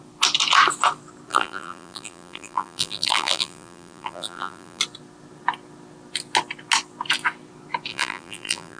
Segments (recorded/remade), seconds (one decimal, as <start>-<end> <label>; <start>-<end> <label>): 0.0-1.3 recorded; 1.3-4.8 remade; 4.8-7.9 recorded; 7.9-8.8 remade